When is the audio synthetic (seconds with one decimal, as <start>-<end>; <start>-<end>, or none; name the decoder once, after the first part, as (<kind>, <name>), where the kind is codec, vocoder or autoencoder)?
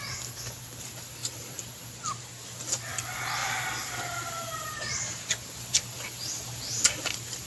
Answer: none